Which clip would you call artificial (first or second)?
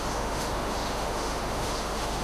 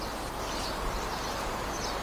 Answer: first